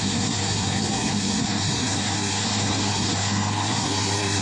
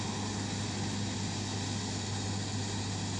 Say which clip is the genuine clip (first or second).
second